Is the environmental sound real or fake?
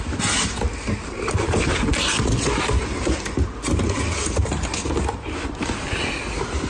real